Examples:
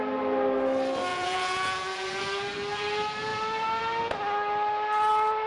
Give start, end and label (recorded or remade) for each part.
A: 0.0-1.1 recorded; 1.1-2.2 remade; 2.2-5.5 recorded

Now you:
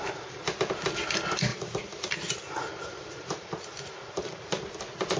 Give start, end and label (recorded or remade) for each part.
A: 0.0-1.5 recorded; 1.5-4.6 remade; 4.6-5.2 recorded

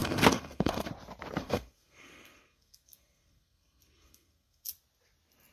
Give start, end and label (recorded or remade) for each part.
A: 0.0-0.9 remade; 0.9-1.4 recorded; 1.4-4.7 remade; 4.7-5.5 recorded

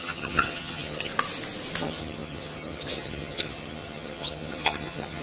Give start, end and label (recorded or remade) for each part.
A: 0.0-1.1 remade; 1.1-1.8 recorded; 1.8-5.2 remade

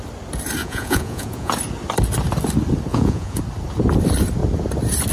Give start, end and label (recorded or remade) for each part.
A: 0.0-0.6 recorded; 0.6-1.5 remade; 1.5-2.9 recorded; 2.9-3.4 remade; 3.4-5.1 recorded

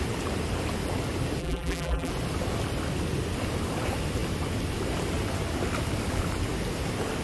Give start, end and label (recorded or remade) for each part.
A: 0.0-1.4 recorded; 1.4-2.1 remade; 2.1-7.2 recorded

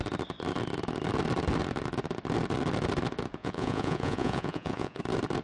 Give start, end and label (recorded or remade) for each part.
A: 0.0-3.4 recorded; 3.4-5.0 remade; 5.0-5.4 recorded

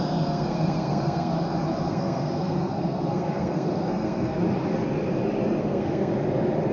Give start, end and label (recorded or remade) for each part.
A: 0.0-1.3 remade; 1.3-1.9 recorded; 1.9-4.4 remade; 4.4-5.6 recorded; 5.6-6.1 remade; 6.1-6.7 recorded